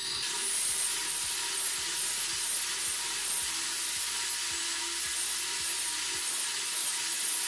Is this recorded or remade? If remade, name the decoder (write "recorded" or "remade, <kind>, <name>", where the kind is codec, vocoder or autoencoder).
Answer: recorded